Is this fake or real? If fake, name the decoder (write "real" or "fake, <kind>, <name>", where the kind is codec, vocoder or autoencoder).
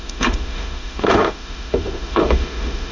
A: fake, autoencoder, DAC-VAE